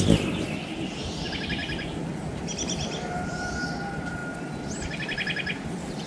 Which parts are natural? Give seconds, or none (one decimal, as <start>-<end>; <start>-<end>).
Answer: 4.2-6.1